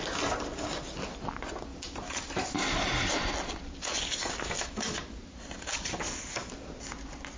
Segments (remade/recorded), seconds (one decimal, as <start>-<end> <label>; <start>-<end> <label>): 0.0-1.7 recorded; 1.7-3.3 remade; 3.3-5.2 recorded; 5.2-6.3 remade; 6.3-7.4 recorded